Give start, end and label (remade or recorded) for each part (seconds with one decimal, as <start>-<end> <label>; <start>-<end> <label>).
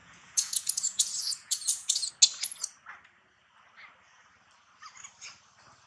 0.0-2.1 remade; 2.1-5.9 recorded